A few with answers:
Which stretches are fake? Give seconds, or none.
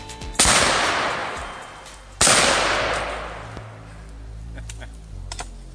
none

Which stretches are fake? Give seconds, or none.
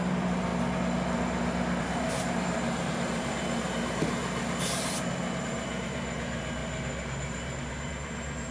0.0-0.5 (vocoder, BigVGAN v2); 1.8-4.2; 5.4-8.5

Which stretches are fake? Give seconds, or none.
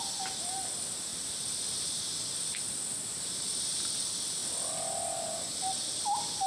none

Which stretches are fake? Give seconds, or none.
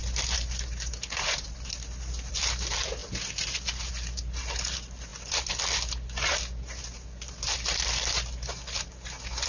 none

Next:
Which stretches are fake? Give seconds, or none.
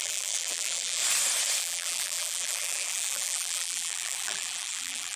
0.0-1.0 (vocoder, BigVGAN v2); 1.6-5.2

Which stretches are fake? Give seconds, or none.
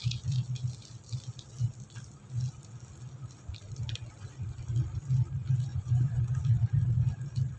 5.7-6.4 (vocoder, Vocos)